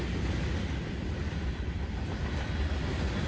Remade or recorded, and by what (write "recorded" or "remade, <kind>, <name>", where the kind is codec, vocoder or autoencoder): remade, vocoder, BigVGAN v2